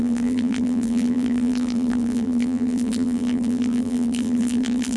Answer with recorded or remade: remade